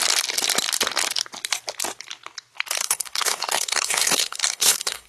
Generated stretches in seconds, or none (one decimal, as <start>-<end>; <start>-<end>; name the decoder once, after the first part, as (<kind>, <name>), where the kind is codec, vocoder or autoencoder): 2.8-5.1 (codec, SNAC)